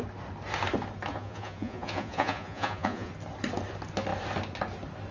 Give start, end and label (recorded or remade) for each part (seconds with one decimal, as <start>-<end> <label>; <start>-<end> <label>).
0.0-1.1 recorded; 1.1-3.1 remade; 3.1-5.1 recorded